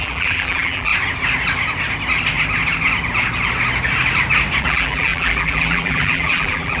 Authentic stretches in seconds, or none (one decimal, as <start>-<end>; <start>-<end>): 0.9-4.6